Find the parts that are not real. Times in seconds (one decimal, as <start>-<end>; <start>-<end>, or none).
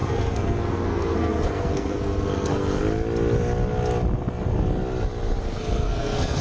0.0-2.8; 5.4-6.4